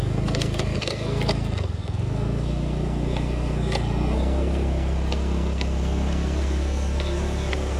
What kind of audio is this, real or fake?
fake